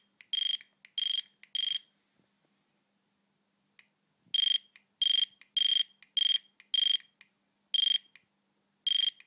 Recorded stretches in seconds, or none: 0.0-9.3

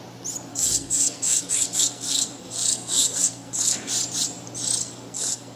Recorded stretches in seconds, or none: 0.0-0.5; 3.9-4.8

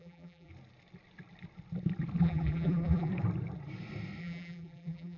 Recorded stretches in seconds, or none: 0.5-2.2; 3.1-4.2

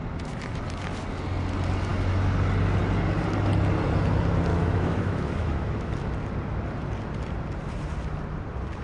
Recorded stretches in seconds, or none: 0.0-4.5; 5.9-8.8

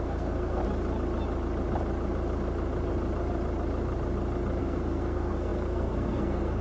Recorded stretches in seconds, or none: 0.6-4.6